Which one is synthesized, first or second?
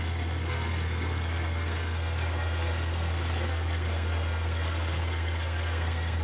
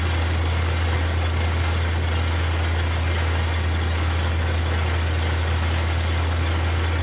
first